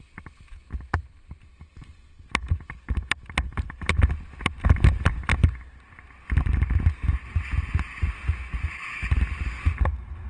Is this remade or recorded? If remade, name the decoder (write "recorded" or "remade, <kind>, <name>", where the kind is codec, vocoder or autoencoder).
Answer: recorded